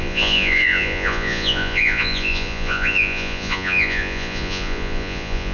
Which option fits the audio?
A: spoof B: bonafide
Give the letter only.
A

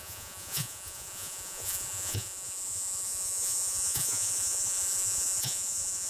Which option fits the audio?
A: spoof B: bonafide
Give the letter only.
A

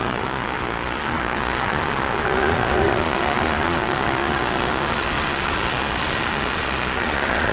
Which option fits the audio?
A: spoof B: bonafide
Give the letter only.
A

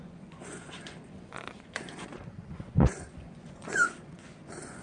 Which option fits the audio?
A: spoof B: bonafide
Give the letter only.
A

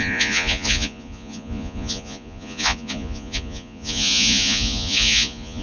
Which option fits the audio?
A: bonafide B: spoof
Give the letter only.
B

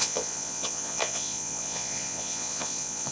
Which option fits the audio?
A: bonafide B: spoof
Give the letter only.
B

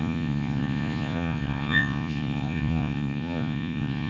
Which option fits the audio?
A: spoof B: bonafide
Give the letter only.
A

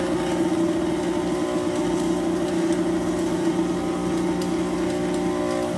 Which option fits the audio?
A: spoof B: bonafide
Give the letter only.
B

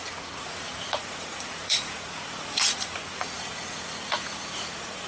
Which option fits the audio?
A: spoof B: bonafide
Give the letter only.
A